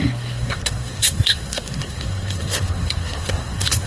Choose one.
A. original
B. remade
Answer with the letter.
B